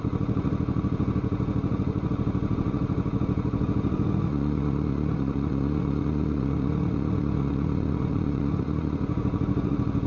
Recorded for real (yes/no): no